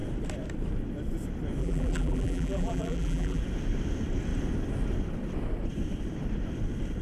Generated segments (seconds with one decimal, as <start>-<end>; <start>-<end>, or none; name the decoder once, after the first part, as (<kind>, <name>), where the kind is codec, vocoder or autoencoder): 1.6-3.4 (vocoder, BigVGAN v2)